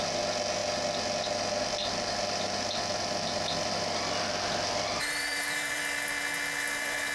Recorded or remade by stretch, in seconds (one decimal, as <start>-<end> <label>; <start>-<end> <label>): 0.0-5.0 recorded; 5.0-5.8 remade; 5.8-7.1 recorded